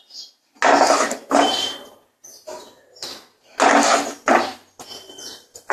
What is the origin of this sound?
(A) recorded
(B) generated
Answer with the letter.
A